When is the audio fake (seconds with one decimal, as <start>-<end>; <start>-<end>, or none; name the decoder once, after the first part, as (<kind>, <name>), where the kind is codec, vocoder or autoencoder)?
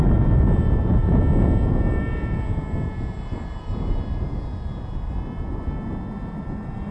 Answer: 1.0-5.1 (vocoder, Vocos)